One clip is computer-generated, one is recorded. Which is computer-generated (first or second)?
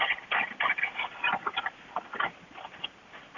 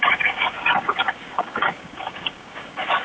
second